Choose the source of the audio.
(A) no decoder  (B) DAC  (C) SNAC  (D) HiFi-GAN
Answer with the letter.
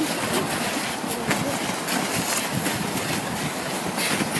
A